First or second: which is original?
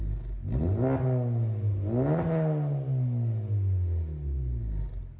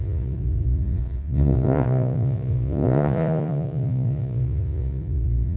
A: first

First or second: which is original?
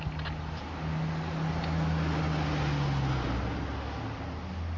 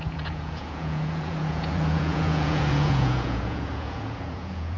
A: first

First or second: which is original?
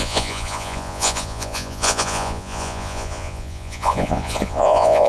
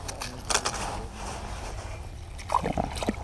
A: second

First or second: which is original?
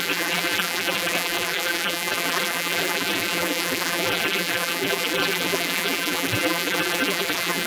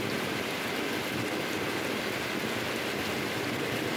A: second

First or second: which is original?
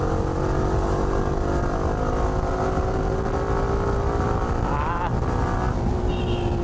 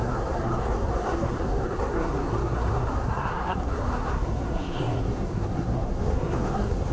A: first